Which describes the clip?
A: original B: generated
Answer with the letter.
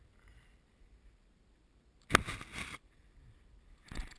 A